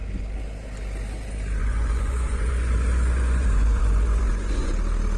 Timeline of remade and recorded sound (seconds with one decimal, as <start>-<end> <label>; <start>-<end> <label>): 0.0-1.6 recorded; 1.6-4.7 remade; 4.7-5.2 recorded